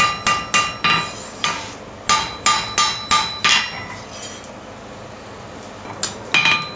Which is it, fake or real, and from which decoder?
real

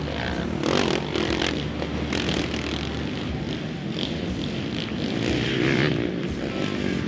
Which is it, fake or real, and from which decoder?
real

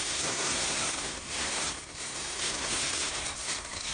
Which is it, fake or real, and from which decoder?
fake, codec, SNAC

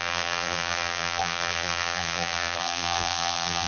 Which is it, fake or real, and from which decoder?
fake, vocoder, BigVGAN v2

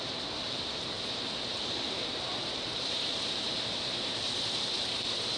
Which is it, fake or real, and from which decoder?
fake, vocoder, BigVGAN v2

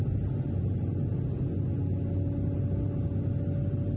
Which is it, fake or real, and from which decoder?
real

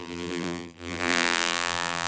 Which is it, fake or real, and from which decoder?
fake, vocoder, BigVGAN v2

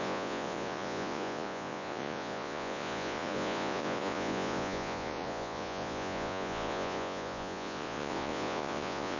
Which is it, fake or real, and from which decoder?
fake, vocoder, Vocos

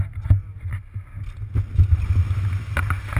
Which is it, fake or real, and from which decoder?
real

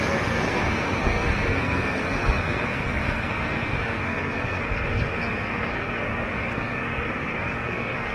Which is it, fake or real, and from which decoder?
fake, codec, SNAC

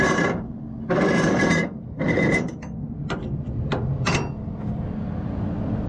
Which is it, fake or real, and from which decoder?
real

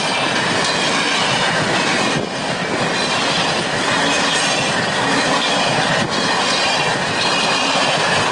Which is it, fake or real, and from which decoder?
real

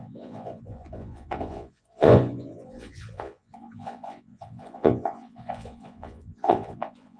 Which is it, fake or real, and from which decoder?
fake, vocoder, Vocos